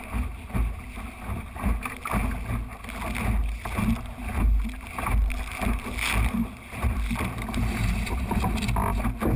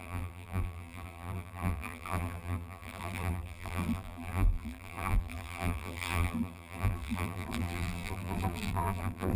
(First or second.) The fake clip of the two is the second